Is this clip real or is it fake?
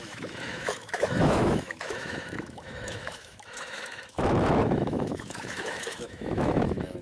fake